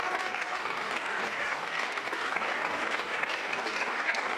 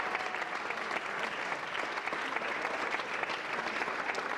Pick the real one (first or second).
second